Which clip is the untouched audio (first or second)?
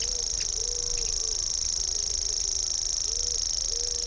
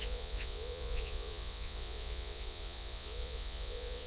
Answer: first